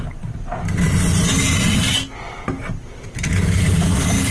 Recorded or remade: recorded